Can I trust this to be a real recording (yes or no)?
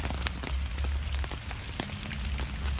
yes